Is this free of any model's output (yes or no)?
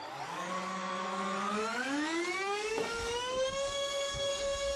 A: no